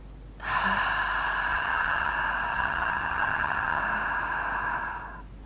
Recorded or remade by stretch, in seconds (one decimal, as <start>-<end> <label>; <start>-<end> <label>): 0.0-1.5 recorded; 1.5-2.1 remade; 2.1-2.5 recorded; 2.5-3.8 remade; 3.8-5.5 recorded